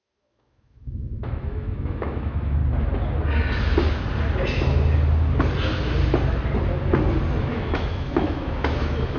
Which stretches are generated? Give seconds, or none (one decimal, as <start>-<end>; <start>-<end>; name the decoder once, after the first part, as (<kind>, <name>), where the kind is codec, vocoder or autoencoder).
0.0-2.6 (autoencoder, DAC-VAE); 7.4-9.2